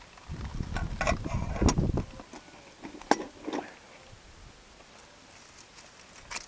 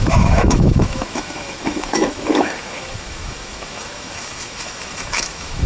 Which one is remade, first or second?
second